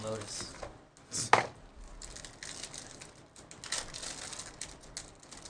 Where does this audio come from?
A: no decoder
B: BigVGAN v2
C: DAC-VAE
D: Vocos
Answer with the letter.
A